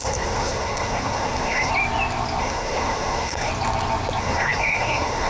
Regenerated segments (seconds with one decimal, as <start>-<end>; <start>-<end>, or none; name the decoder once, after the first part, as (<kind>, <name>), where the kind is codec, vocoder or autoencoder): 0.0-1.7 (codec, SNAC); 2.4-3.5; 4.2-5.3